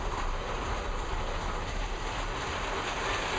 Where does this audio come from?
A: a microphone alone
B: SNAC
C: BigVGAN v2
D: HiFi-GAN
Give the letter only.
A